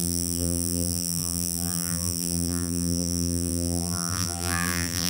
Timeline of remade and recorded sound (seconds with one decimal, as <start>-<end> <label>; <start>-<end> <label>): 0.0-5.1 remade